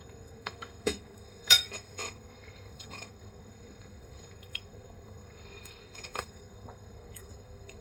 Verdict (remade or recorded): remade